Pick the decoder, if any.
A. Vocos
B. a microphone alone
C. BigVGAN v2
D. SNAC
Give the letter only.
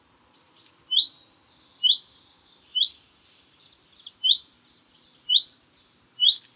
B